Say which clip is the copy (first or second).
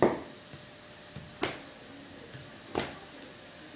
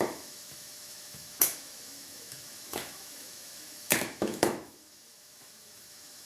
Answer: second